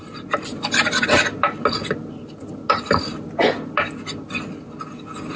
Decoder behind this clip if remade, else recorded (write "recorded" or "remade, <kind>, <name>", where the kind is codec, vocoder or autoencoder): recorded